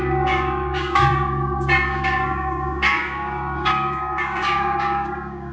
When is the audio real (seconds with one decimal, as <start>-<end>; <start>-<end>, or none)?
none